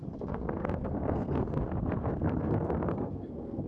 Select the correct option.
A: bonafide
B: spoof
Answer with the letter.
B